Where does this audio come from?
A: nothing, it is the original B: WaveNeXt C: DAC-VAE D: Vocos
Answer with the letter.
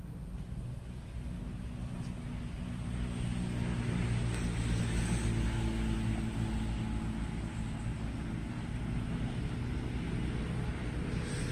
A